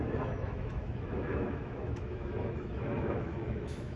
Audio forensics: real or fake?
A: fake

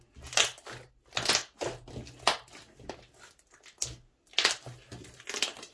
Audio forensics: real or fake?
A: real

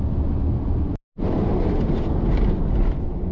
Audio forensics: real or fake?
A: real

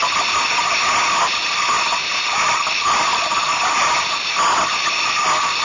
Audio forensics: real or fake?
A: real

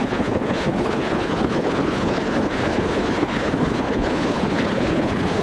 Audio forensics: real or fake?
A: fake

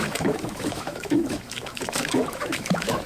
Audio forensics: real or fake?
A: fake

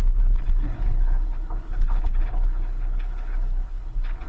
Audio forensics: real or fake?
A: fake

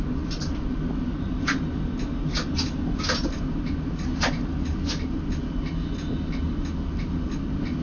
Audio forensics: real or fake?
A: real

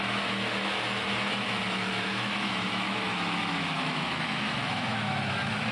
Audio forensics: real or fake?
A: fake